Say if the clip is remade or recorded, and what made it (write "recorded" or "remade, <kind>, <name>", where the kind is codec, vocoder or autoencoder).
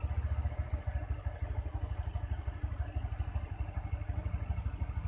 recorded